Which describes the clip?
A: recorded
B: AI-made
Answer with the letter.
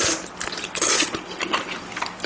A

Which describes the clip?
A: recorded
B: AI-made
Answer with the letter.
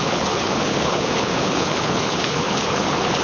B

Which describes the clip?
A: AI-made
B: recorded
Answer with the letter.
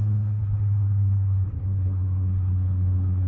A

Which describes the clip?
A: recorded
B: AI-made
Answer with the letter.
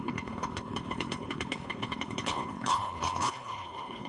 B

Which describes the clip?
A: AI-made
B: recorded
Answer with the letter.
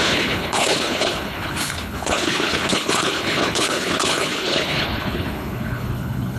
A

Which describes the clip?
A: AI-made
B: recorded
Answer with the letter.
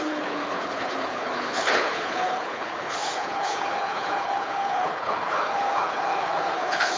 A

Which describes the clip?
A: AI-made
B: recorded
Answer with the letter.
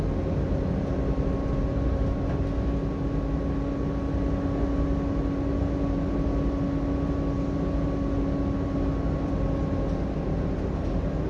B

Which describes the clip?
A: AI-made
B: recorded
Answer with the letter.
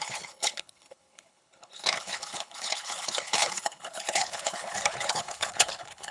A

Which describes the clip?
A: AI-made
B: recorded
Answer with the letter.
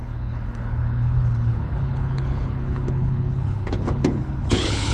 A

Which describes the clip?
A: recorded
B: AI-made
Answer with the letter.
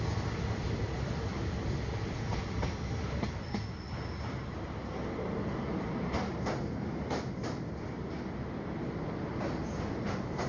A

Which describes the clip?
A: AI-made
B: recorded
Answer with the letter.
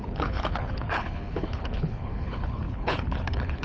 A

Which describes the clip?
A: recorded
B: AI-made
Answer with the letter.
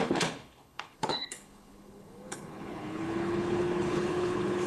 B